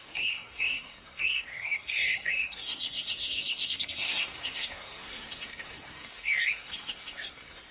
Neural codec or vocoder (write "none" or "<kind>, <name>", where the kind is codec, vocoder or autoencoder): codec, SNAC